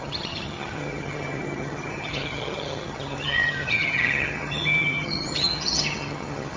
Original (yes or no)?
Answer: no